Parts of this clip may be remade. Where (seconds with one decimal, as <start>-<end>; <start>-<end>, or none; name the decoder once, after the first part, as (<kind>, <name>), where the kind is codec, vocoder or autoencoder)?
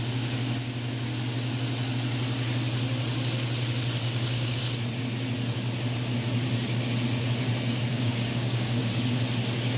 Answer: 4.0-4.6 (codec, DAC); 7.9-8.9